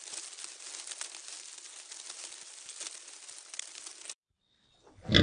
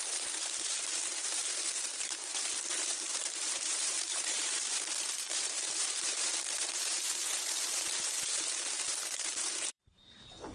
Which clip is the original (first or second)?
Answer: first